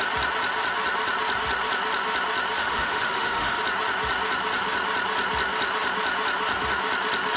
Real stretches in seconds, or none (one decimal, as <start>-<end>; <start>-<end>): 0.0-2.6; 3.6-7.4